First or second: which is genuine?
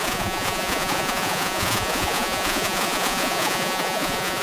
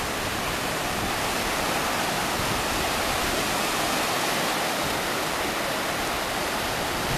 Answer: second